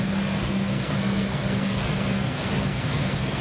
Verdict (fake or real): fake